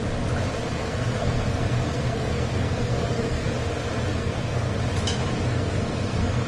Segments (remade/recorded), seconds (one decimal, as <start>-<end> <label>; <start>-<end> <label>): 0.0-0.8 recorded; 0.8-3.5 remade; 3.5-4.1 recorded; 4.1-4.8 remade; 4.8-5.5 recorded; 5.5-6.5 remade